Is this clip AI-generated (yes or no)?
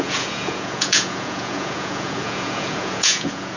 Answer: yes